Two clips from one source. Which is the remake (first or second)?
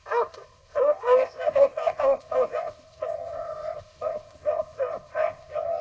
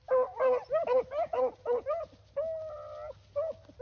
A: first